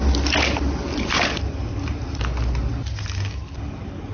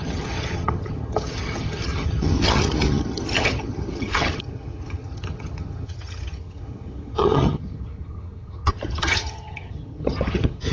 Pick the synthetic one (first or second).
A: second